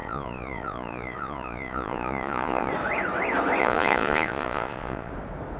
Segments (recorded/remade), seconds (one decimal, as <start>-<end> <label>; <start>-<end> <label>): 0.0-2.7 remade; 2.7-3.6 recorded; 3.6-5.1 remade; 5.1-5.6 recorded

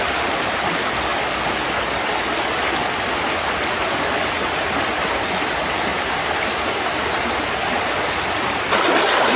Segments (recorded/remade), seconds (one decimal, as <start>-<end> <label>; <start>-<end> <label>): 0.0-9.4 recorded

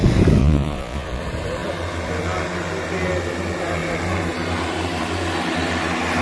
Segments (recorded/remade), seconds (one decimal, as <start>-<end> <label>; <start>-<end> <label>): 0.0-0.4 recorded; 0.4-1.2 remade; 1.2-6.2 recorded

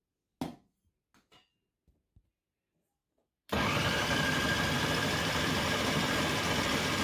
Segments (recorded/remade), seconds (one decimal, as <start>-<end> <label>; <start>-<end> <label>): 0.0-3.0 recorded; 3.0-6.5 remade; 6.5-7.0 recorded

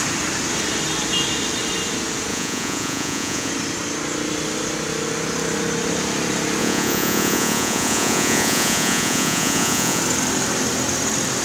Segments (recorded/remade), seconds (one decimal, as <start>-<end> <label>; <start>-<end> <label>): 0.0-2.3 recorded; 2.3-3.5 remade; 3.5-6.6 recorded; 6.6-10.0 remade; 10.0-11.4 recorded